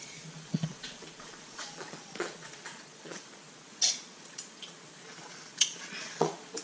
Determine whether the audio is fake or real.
fake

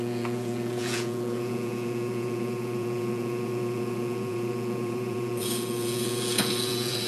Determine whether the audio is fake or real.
fake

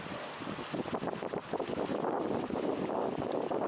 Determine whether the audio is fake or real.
real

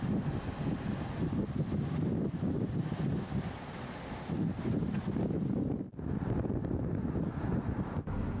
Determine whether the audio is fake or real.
real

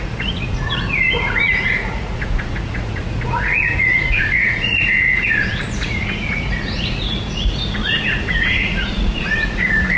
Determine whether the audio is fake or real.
fake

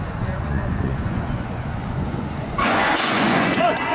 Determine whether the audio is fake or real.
fake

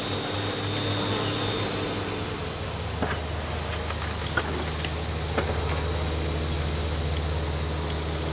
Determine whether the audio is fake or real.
real